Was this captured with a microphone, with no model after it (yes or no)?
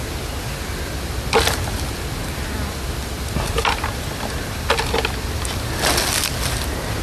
yes